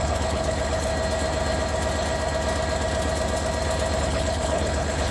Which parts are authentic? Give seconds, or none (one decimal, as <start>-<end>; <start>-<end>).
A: 0.9-4.0